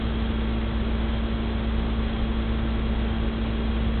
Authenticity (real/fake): real